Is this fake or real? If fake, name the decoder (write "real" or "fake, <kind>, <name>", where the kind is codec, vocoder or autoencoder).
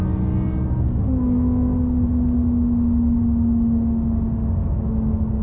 real